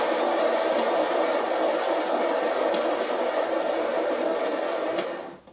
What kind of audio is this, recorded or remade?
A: recorded